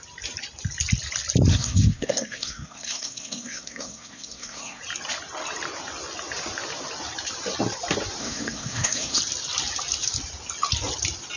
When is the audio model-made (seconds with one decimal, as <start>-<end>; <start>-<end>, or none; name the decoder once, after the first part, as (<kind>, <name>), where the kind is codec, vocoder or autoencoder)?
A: 1.5-4.8 (codec, SNAC); 8.2-9.2